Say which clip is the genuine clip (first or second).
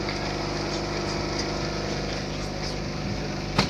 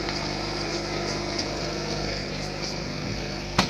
first